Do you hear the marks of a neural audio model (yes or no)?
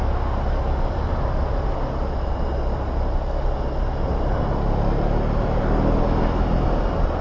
no